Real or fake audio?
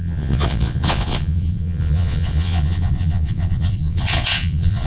fake